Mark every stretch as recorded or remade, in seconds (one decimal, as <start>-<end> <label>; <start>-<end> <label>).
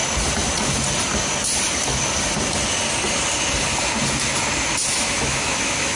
0.0-4.9 recorded; 4.9-6.0 remade